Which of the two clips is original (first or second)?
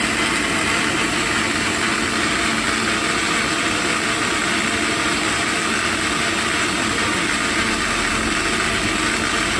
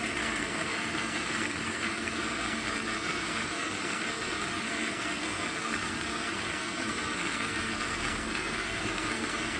first